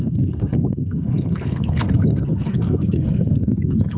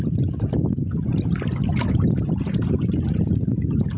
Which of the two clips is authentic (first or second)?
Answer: second